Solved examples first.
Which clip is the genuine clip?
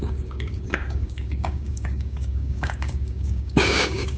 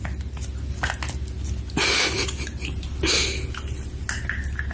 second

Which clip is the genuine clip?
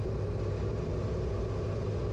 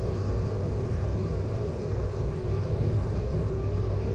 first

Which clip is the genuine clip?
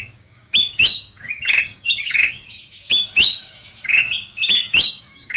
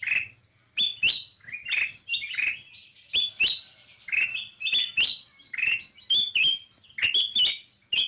second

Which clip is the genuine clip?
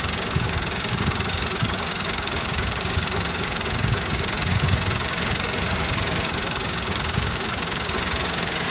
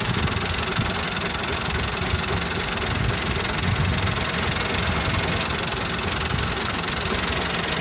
second